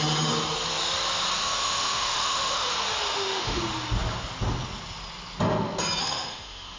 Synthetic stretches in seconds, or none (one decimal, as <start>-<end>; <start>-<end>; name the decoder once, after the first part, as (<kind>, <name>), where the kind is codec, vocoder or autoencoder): 1.4-2.7 (autoencoder, DAC-VAE); 3.1-3.6; 6.0-6.8